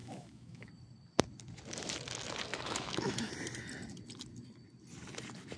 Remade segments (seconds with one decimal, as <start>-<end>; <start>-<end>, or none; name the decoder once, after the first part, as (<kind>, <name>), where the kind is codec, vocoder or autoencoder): 0.0-0.7 (autoencoder, DAC-VAE); 2.5-3.3